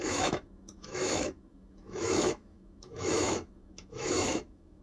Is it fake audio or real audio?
fake